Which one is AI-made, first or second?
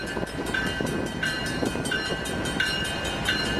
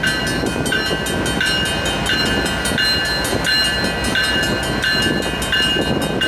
first